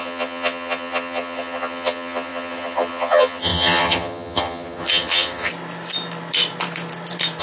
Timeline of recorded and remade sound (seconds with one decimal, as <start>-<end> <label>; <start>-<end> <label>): 0.0-5.5 remade; 5.5-7.4 recorded